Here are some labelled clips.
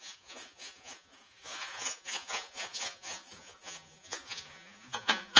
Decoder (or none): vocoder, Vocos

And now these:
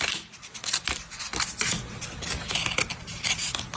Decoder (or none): none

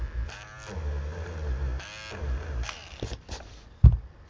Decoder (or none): none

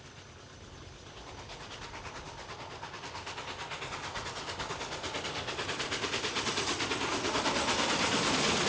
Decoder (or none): none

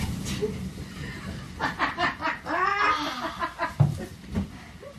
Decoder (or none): none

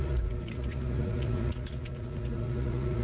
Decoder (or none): vocoder, Vocos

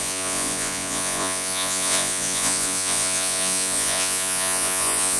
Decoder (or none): vocoder, Vocos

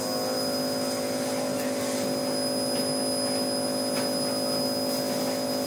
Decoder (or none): none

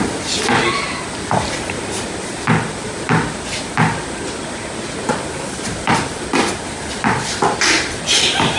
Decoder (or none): none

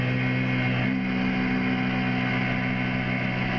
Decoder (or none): none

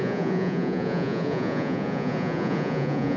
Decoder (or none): vocoder, Vocos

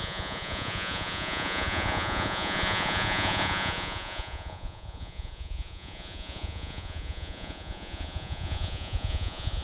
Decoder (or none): vocoder, Vocos